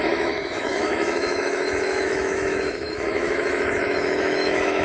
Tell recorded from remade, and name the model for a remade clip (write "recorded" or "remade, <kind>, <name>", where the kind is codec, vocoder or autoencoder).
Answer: remade, autoencoder, DAC-VAE